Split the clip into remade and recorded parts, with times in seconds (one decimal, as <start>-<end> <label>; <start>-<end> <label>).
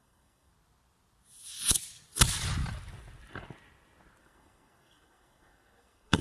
0.0-0.5 remade; 0.5-4.2 recorded; 4.2-6.2 remade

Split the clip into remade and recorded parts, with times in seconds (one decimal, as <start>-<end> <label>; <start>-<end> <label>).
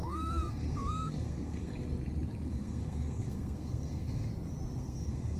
0.0-1.7 remade; 1.7-2.5 recorded; 2.5-4.3 remade; 4.3-4.8 recorded; 4.8-5.4 remade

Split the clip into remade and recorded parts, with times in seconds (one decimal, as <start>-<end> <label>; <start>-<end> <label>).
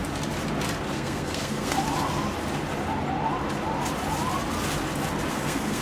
0.0-0.9 recorded; 0.9-1.8 remade; 1.8-5.3 recorded; 5.3-5.8 remade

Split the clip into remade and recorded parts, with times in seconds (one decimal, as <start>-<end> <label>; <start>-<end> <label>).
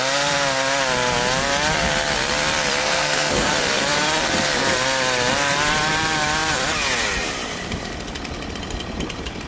0.0-2.8 recorded; 2.8-3.5 remade; 3.5-9.5 recorded